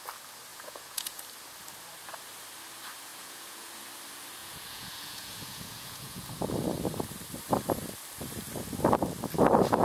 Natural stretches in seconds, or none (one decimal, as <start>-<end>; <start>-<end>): 0.0-0.5; 1.2-3.1; 3.7-4.4; 6.3-9.8